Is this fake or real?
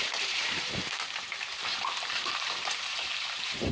fake